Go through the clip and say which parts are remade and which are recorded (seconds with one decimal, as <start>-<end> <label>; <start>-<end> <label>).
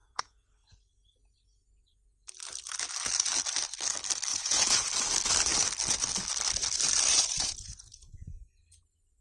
0.0-0.5 remade; 0.5-4.3 recorded; 4.3-4.9 remade; 4.9-7.1 recorded; 7.1-8.3 remade; 8.3-9.2 recorded